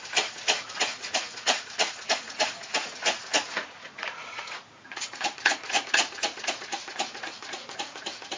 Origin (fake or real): fake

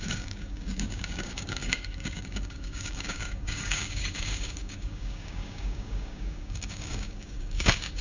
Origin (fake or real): fake